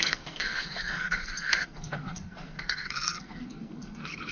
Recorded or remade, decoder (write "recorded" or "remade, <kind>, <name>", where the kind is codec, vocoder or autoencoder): remade, codec, SNAC